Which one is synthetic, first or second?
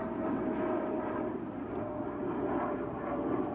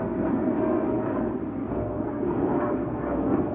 second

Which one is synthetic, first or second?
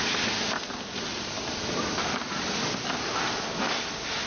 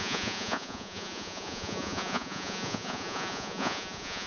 second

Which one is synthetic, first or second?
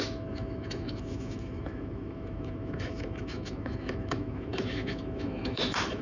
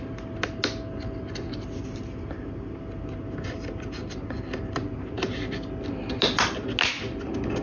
first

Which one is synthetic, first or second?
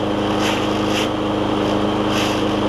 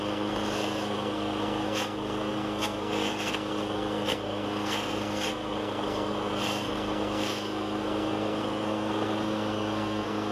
second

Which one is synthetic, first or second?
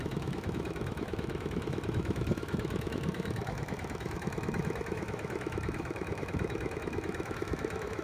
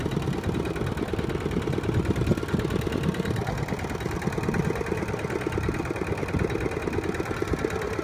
first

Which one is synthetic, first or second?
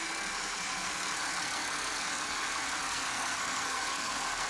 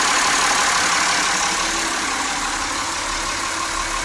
first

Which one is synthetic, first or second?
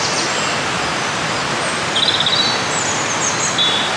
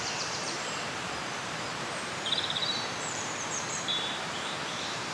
second